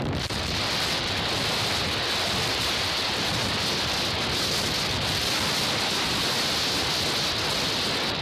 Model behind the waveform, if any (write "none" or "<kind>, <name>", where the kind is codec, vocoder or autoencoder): none